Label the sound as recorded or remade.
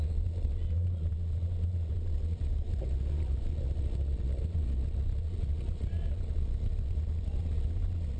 remade